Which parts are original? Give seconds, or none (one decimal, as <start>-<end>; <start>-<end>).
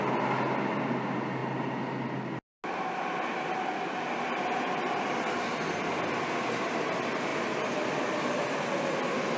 0.0-9.4